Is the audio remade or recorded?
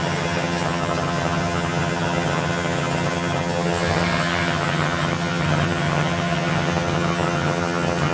remade